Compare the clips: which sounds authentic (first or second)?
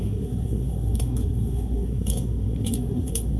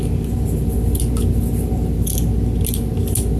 second